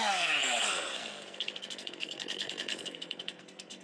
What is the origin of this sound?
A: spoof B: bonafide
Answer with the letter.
A